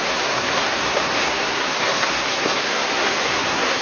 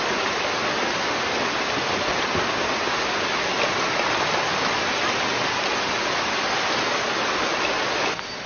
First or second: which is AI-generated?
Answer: first